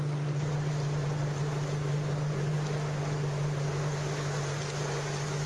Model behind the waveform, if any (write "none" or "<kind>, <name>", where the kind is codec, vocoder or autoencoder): none